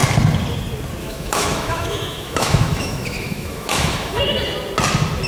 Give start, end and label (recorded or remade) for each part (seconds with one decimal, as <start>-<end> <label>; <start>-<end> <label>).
0.0-1.0 recorded; 1.0-4.2 remade; 4.2-5.3 recorded